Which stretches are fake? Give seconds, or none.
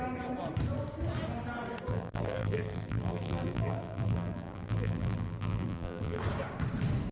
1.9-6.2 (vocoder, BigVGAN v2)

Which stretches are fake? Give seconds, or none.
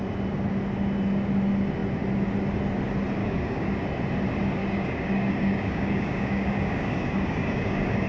3.2-3.7 (codec, DAC); 4.6-8.1